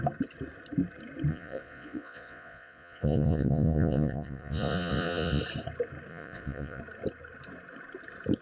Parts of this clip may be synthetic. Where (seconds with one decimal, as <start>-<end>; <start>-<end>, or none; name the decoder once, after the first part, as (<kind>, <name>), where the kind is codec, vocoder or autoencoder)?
1.3-5.4 (vocoder, Vocos); 6.1-6.8